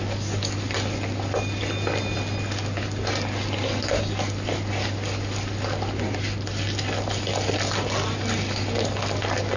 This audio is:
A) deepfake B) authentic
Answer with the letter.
B